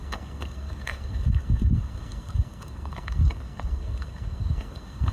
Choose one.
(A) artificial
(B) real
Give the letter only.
A